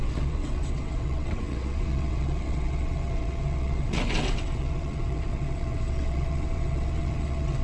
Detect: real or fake fake